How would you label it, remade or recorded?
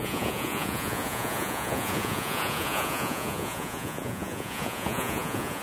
remade